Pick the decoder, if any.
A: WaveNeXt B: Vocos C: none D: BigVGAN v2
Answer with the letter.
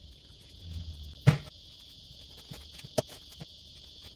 B